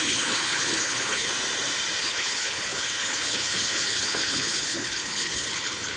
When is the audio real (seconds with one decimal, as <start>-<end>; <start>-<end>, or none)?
1.3-2.0